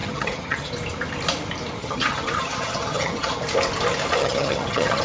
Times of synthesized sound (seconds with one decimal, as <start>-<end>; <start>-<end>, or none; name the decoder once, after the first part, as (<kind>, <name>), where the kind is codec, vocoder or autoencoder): 0.0-0.7 (vocoder, HiFi-GAN); 1.8-3.4; 4.2-5.0